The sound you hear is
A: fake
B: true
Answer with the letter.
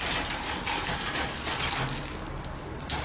B